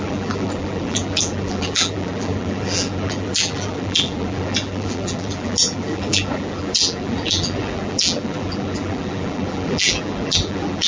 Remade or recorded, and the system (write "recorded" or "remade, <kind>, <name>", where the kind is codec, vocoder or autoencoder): remade, vocoder, BigVGAN v2